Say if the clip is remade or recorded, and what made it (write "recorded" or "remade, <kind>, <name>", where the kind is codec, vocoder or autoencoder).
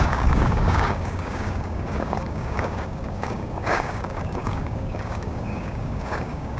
remade, codec, DAC